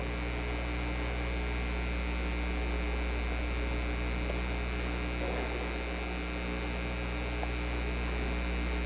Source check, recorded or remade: recorded